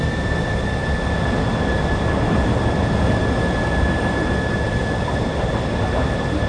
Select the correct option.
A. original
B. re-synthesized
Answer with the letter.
A